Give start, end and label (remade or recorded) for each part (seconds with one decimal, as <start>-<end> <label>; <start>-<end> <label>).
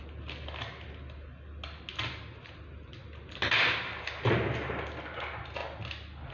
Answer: 0.0-6.3 recorded